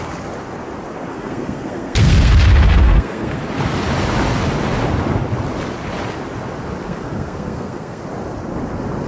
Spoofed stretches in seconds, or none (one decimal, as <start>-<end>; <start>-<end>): 1.1-2.3; 2.8-3.4; 6.8-8.0